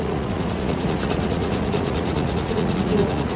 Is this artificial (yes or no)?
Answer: yes